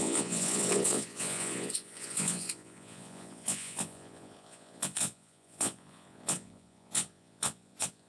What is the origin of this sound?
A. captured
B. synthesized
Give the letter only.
B